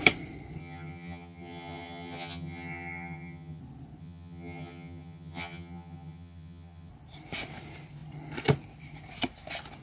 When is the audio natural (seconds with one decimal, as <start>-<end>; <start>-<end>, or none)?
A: 0.0-0.6; 3.6-4.0; 6.9-9.8